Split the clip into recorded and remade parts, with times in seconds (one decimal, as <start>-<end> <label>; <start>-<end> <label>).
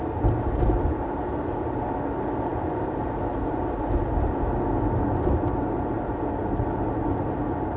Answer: 0.0-2.5 recorded; 2.5-3.8 remade; 3.8-7.8 recorded